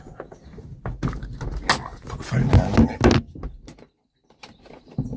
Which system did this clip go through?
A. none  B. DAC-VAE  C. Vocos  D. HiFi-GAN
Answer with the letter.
A